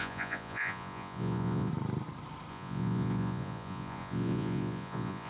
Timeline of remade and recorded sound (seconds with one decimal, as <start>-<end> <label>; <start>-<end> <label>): 0.0-1.7 remade; 1.7-2.5 recorded; 2.5-5.3 remade